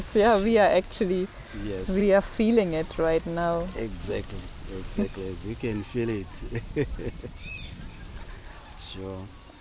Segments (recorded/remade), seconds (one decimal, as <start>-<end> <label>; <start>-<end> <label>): 0.0-9.6 recorded

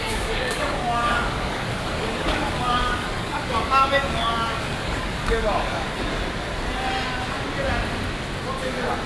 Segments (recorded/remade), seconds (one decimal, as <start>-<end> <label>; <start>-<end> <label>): 0.0-6.1 remade; 6.1-9.1 recorded

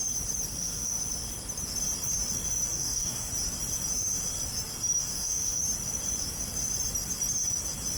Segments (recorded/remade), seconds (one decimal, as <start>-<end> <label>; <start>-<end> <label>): 0.0-0.5 recorded; 0.5-1.0 remade; 1.0-2.7 recorded; 2.7-3.3 remade; 3.3-5.0 recorded; 5.0-5.6 remade; 5.6-8.0 recorded

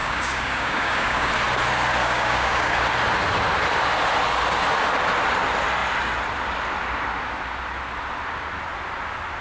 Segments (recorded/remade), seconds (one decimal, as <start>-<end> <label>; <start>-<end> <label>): 0.0-1.3 remade; 1.3-2.0 recorded; 2.0-2.8 remade; 2.8-9.4 recorded